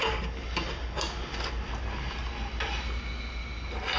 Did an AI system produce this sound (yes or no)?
no